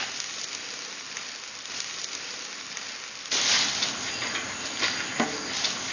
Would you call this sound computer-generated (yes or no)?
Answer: no